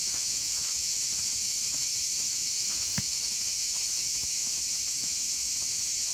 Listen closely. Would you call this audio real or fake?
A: fake